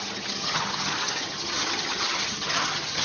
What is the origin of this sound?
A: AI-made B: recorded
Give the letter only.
A